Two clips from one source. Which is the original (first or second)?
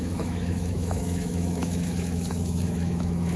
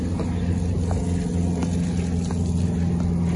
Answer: second